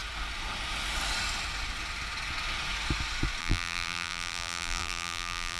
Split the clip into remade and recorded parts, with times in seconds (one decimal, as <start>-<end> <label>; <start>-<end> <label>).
0.0-3.4 recorded; 3.4-5.6 remade

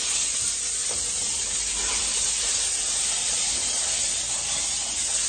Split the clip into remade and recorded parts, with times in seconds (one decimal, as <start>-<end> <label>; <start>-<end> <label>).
0.0-0.8 recorded; 0.8-4.0 remade; 4.0-5.3 recorded

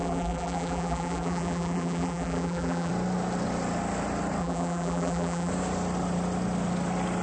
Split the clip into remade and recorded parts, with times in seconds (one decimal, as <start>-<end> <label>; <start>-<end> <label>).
0.0-2.9 remade; 2.9-4.4 recorded; 4.4-5.5 remade; 5.5-7.2 recorded

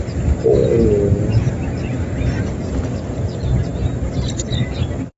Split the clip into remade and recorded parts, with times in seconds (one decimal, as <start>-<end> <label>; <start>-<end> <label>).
0.0-5.2 recorded

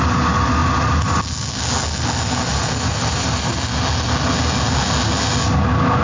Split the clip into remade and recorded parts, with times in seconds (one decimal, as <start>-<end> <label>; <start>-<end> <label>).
0.0-6.0 recorded